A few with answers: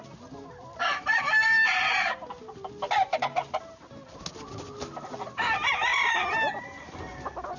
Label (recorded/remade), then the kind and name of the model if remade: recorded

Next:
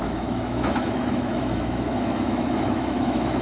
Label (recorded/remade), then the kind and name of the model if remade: remade, autoencoder, DAC-VAE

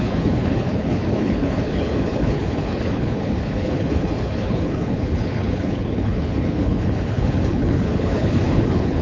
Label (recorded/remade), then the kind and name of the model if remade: remade, codec, HILCodec